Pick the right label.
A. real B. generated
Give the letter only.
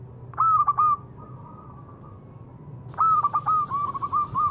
A